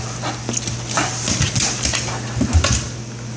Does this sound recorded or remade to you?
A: remade